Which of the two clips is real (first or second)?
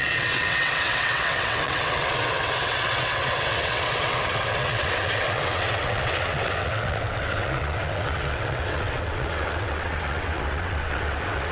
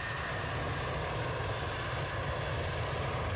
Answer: second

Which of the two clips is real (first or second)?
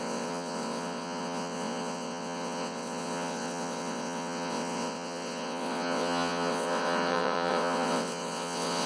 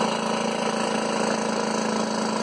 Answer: second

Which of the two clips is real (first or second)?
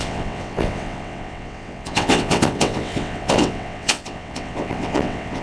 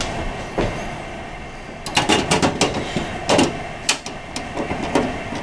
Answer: second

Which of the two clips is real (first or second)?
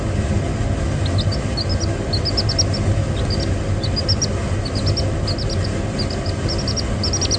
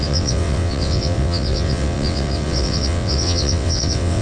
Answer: first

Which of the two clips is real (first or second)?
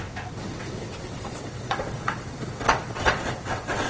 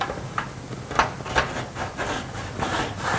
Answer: second